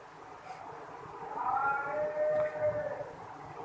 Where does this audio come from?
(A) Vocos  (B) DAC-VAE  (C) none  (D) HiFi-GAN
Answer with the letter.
C